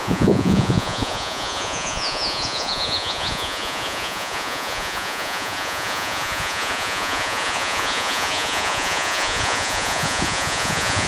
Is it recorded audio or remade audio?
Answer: remade